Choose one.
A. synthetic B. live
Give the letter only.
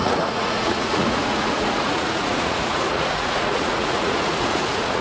A